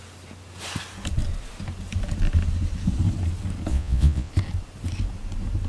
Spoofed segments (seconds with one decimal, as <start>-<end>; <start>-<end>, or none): 3.7-4.3